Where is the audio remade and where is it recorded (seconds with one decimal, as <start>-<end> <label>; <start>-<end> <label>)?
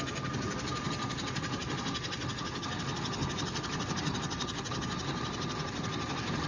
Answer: 0.0-6.5 recorded